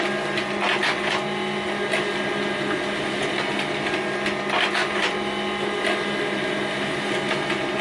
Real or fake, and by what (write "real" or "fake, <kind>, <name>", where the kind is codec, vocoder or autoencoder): real